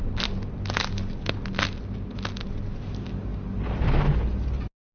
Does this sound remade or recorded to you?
recorded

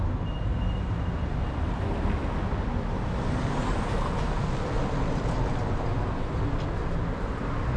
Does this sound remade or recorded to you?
recorded